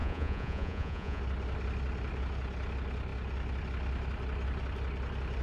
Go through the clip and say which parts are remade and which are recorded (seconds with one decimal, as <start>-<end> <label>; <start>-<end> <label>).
0.0-1.2 remade; 1.2-5.4 recorded